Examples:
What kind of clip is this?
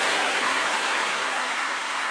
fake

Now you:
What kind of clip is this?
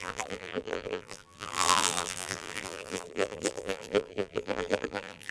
fake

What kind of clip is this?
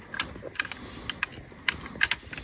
real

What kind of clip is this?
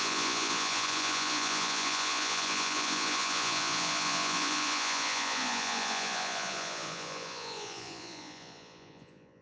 fake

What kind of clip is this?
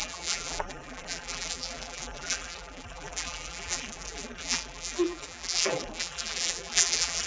fake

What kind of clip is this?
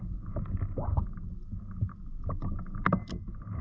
real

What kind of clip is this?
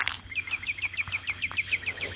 real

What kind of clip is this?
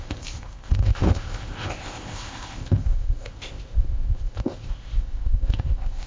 fake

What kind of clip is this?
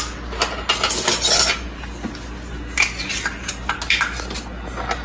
real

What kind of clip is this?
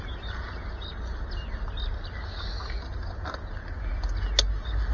real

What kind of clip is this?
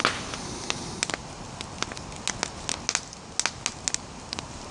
real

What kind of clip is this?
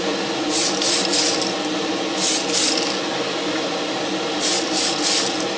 real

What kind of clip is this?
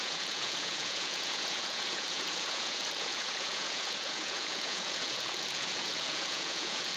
fake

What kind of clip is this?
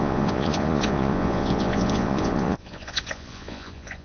fake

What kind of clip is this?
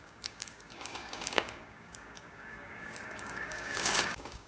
fake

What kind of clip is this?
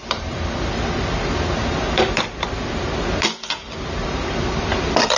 fake